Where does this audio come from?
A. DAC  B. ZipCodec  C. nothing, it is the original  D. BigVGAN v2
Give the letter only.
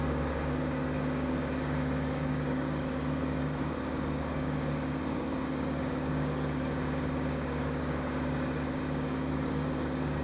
A